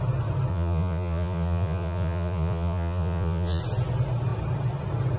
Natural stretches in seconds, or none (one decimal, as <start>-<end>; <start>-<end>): 0.0-0.5; 3.6-5.2